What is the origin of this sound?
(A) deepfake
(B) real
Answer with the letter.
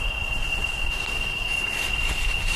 B